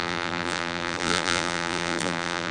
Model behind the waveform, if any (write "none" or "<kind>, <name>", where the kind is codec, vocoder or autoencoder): vocoder, BigVGAN v2